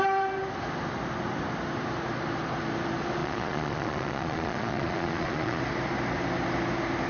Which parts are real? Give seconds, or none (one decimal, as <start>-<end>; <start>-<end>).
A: 0.0-3.2; 5.6-7.1